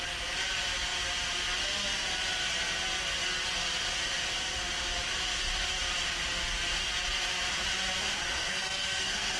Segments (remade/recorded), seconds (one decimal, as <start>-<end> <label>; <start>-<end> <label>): 0.0-8.4 recorded; 8.4-9.4 remade